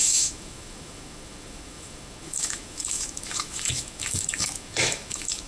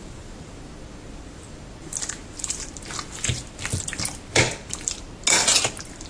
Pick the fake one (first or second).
first